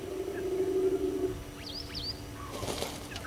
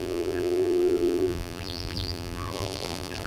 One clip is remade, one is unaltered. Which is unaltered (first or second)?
first